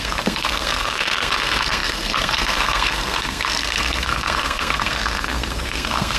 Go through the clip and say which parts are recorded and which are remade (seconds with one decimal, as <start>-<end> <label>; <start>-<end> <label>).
0.0-6.2 remade